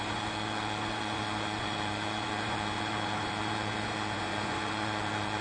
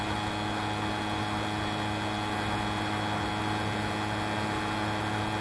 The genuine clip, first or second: second